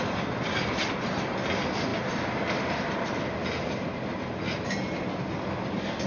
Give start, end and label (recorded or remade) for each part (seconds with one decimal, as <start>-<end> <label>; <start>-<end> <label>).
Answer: 0.0-6.1 recorded